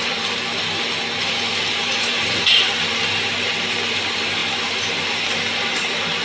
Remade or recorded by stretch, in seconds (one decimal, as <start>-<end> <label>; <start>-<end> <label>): 0.0-6.2 remade